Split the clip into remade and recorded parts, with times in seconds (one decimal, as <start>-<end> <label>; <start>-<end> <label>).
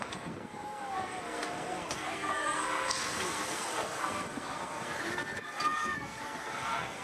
0.0-7.0 remade